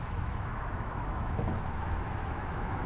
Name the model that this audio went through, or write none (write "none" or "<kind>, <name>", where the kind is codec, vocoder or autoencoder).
autoencoder, DAC-VAE